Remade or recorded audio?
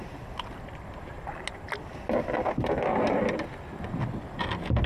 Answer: recorded